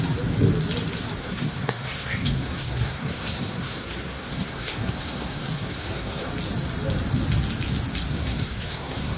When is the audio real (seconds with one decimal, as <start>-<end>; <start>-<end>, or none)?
0.0-1.2; 6.3-8.1